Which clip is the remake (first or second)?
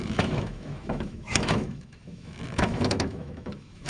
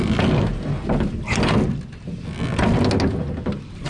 first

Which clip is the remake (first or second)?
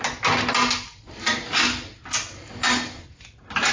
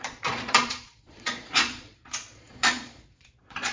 second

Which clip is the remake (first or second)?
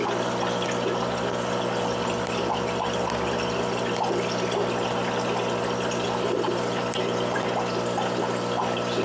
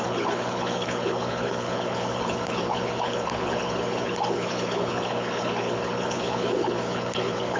second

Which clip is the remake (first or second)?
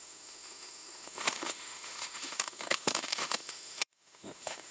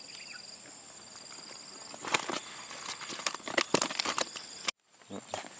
first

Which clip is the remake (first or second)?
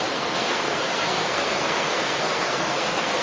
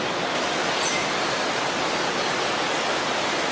first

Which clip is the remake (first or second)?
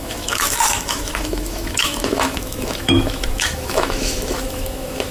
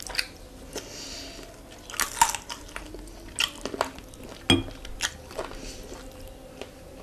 first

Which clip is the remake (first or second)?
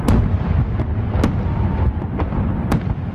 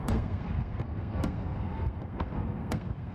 second